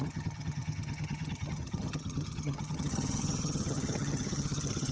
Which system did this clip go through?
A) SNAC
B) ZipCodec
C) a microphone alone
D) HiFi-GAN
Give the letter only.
D